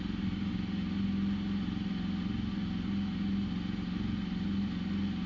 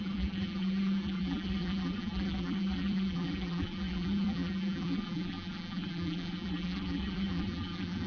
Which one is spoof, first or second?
second